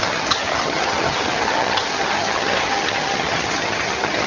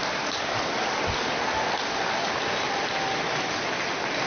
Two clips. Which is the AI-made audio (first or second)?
first